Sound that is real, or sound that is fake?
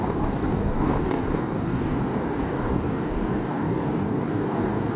fake